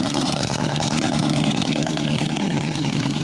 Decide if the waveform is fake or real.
fake